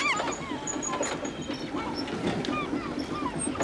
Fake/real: real